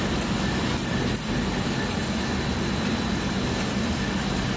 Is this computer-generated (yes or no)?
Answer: no